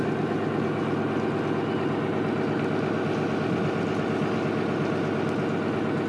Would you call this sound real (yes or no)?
yes